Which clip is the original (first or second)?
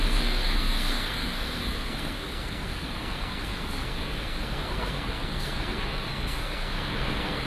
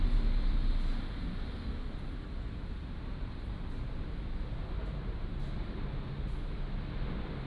second